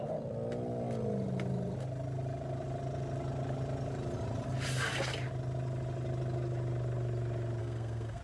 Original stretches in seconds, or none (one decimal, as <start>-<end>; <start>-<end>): 0.0-7.6